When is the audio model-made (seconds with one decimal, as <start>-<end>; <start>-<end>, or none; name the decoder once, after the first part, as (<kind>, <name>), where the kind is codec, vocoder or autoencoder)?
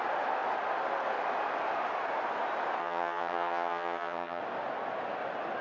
2.8-4.4 (vocoder, HiFi-GAN)